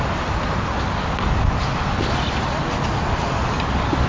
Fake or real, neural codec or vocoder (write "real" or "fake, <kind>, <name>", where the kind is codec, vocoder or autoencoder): real